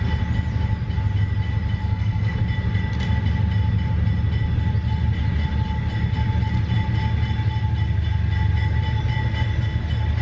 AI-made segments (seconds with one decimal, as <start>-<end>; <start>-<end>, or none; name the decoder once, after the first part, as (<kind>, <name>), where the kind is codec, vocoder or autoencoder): 1.8-2.4 (codec, SNAC)